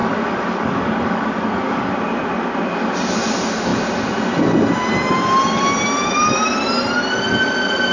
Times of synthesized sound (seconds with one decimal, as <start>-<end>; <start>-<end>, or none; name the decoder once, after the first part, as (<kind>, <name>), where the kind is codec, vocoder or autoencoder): 0.0-1.9 (codec, DAC)